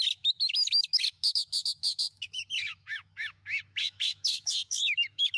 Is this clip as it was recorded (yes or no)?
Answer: no